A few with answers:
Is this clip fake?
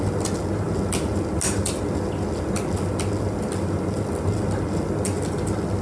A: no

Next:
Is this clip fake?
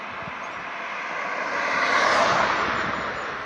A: no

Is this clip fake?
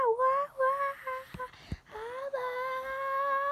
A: no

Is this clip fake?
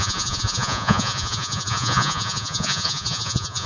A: yes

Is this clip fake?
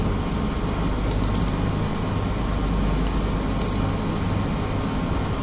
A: no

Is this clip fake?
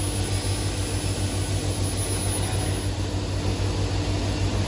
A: no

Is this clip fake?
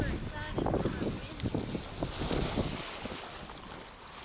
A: no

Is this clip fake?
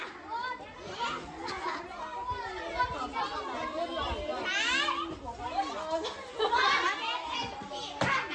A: no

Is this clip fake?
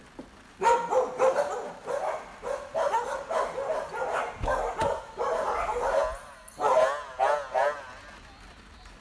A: no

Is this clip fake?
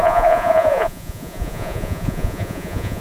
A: yes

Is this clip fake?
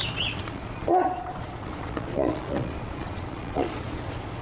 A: yes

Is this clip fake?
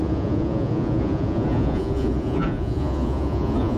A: yes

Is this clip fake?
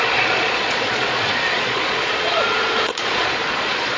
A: yes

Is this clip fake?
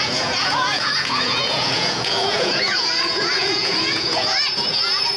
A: yes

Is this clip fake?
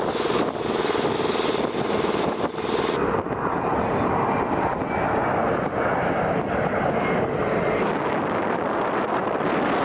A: no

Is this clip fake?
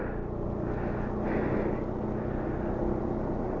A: no